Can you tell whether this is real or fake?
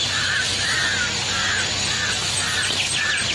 real